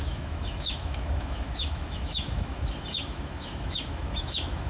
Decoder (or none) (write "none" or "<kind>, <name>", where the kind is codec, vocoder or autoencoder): autoencoder, DAC-VAE